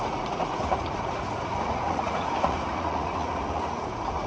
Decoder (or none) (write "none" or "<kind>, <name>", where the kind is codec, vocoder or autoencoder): vocoder, Vocos